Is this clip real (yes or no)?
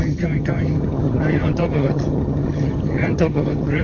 no